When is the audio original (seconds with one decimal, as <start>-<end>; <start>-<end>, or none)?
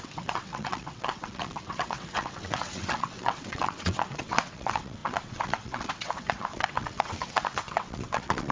none